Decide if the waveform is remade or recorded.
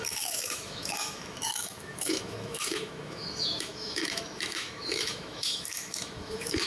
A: remade